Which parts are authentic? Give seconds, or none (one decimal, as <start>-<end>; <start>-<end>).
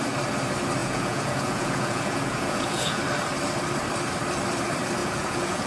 0.0-0.8; 3.0-5.0